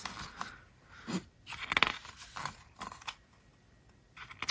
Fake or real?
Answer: real